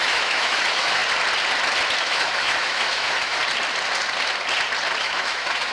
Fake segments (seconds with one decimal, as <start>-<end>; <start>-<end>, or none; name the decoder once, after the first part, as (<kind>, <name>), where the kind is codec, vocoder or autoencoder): 0.0-1.0 (autoencoder, DAC-VAE); 2.0-3.4; 5.0-5.7